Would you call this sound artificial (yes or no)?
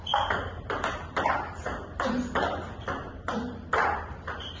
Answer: no